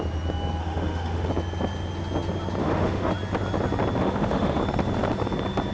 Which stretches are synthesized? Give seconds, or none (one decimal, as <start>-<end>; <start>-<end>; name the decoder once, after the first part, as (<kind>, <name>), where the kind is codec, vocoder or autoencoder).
0.6-1.3 (autoencoder, DAC-VAE); 2.6-3.1; 4.0-4.6